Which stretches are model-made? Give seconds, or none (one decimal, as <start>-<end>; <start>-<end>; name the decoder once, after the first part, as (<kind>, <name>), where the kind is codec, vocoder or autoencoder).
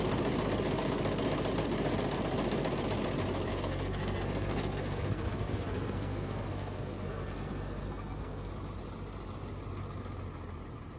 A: 3.5-8.5 (codec, SNAC)